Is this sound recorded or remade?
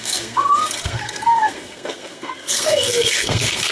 remade